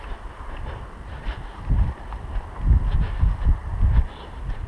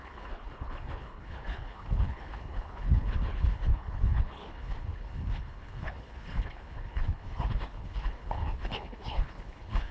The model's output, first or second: second